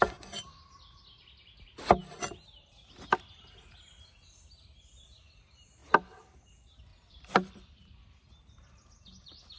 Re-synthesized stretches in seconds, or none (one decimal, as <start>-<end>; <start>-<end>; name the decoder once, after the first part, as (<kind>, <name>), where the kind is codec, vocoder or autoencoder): 5.8-6.5 (vocoder, BigVGAN v2); 6.9-7.8